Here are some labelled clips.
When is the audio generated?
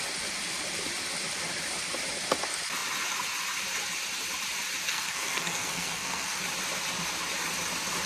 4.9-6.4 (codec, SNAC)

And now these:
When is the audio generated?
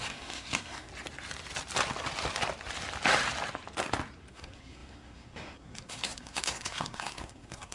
0.0-0.9 (codec, SNAC); 4.3-7.7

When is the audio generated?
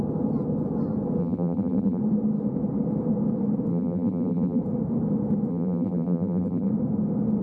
1.2-2.0 (vocoder, BigVGAN v2); 3.7-4.6; 5.5-6.7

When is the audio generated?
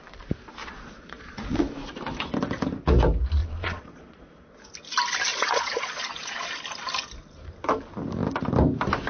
0.6-1.6 (vocoder, Vocos); 3.4-4.3; 5.3-6.5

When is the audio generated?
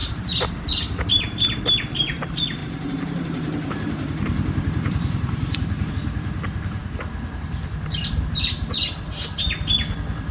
0.0-0.5 (vocoder, BigVGAN v2); 2.6-5.9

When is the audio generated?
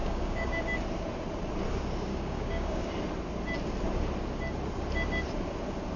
0.0-0.6 (codec, DAC); 2.1-2.9